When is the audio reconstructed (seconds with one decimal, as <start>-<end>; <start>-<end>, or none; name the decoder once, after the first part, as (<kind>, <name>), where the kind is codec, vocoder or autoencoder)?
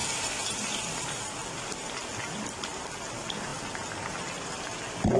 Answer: none